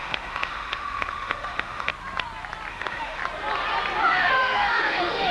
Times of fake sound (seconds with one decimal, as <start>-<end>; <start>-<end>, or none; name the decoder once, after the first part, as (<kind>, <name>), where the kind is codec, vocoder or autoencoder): 0.0-1.9 (autoencoder, DAC-VAE); 2.7-3.2; 4.0-5.3